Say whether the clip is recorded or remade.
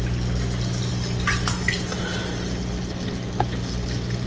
recorded